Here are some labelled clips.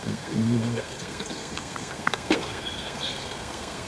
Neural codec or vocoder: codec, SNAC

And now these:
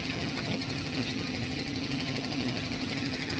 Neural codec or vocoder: vocoder, HiFi-GAN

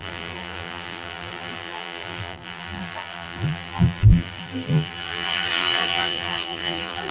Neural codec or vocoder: vocoder, BigVGAN v2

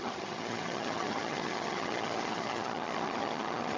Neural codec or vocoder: vocoder, HiFi-GAN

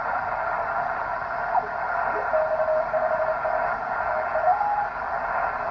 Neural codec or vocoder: none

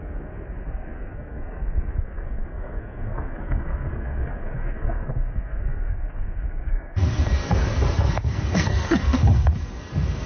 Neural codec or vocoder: codec, SNAC